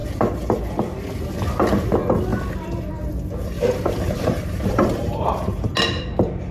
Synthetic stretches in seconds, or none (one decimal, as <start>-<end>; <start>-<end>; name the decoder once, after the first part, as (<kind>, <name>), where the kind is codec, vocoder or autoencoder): 0.0-0.6 (vocoder, BigVGAN v2); 3.4-5.7